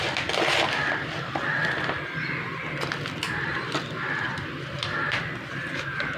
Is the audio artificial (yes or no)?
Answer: yes